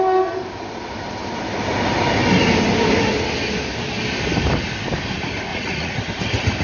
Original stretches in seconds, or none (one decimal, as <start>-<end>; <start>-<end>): 0.0-5.5; 6.1-6.6